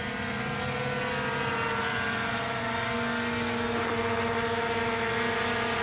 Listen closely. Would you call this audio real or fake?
fake